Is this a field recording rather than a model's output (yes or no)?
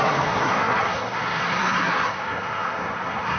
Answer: no